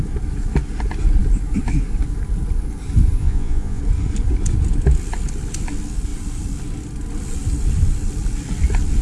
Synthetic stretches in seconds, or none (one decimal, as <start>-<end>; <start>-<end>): 3.2-3.8